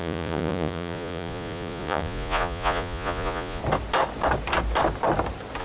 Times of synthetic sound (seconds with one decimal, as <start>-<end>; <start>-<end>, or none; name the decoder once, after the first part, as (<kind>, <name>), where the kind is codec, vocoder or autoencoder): 0.0-3.6 (vocoder, Vocos)

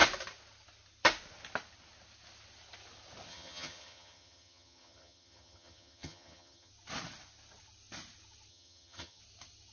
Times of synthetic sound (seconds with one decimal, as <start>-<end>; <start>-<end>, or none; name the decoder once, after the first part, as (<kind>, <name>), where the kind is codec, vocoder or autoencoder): 3.3-6.7 (vocoder, HiFi-GAN); 8.5-9.2

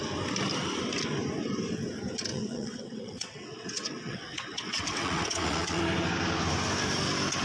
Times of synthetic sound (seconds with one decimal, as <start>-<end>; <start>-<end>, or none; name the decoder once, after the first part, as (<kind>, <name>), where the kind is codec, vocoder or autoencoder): 2.3-5.8 (vocoder, WaveNeXt)

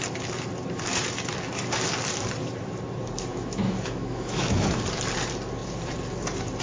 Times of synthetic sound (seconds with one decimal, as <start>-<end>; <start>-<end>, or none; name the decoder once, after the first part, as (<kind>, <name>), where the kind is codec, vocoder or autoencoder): 3.3-4.8 (autoencoder, DAC-VAE)

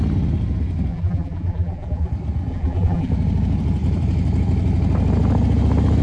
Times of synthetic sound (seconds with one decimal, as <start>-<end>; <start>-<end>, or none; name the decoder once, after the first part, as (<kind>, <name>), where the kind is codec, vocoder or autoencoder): 0.9-2.1 (vocoder, BigVGAN v2); 2.5-3.1

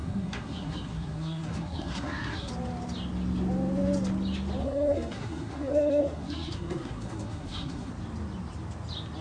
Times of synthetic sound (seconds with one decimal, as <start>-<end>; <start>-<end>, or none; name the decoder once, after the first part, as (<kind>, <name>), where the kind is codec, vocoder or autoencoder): 0.0-2.5 (codec, SNAC); 4.6-7.9

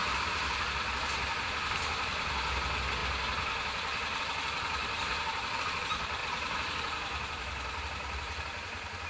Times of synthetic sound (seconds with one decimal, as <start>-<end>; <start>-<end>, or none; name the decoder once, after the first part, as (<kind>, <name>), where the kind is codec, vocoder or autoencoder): 0.0-0.6 (vocoder, BigVGAN v2); 4.8-5.6; 6.2-9.1